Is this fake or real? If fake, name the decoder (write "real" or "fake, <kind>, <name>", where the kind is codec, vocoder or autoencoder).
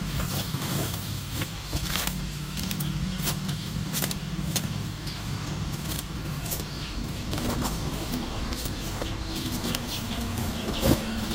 fake, codec, DAC